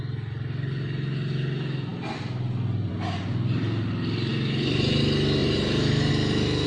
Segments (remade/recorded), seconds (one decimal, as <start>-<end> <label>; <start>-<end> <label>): 0.0-4.3 recorded; 4.3-5.0 remade; 5.0-5.4 recorded; 5.4-6.1 remade; 6.1-6.7 recorded